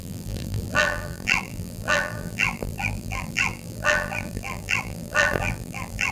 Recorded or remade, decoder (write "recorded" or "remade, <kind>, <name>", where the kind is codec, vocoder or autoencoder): remade, vocoder, BigVGAN v2